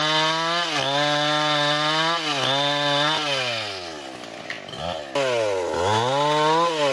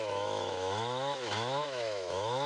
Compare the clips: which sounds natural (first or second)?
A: first